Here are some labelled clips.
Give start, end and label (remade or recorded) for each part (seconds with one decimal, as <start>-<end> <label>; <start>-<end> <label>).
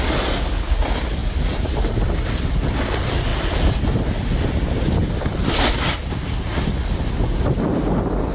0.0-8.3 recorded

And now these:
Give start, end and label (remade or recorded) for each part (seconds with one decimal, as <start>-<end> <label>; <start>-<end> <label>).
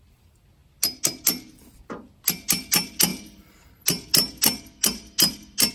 0.0-5.7 recorded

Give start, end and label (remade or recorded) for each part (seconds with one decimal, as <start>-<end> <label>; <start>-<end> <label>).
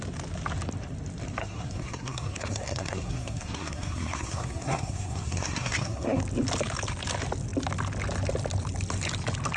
0.0-1.4 recorded; 1.4-6.2 remade; 6.2-9.6 recorded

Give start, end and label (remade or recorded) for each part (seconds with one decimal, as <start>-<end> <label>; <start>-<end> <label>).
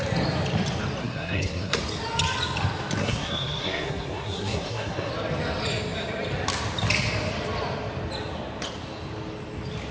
0.0-1.0 recorded; 1.0-1.8 remade; 1.8-3.0 recorded; 3.0-5.1 remade; 5.1-9.9 recorded